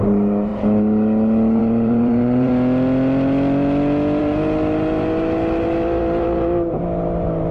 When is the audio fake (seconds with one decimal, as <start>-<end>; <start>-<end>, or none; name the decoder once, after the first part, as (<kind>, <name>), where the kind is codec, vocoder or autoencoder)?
0.0-0.5 (vocoder, BigVGAN v2); 1.6-2.5; 4.2-7.5

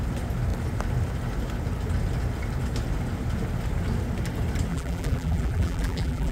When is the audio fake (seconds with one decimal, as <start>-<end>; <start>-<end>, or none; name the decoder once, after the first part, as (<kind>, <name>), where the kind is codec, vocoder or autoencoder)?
4.7-6.3 (vocoder, BigVGAN v2)

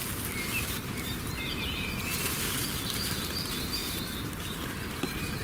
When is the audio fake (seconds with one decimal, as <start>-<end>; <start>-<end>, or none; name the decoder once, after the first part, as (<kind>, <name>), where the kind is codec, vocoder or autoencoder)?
0.0-3.8 (vocoder, BigVGAN v2); 4.4-5.4

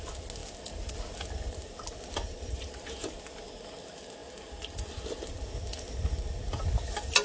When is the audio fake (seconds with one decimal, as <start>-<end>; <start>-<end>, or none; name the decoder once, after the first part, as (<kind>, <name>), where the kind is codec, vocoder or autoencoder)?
none

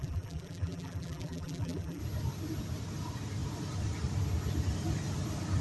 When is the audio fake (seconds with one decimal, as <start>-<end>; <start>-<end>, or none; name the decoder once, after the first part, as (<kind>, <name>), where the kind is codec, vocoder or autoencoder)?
0.0-2.0 (vocoder, BigVGAN v2)